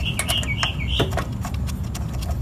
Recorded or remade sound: recorded